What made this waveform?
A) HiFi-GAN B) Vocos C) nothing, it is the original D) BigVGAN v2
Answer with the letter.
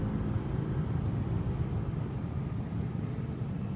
C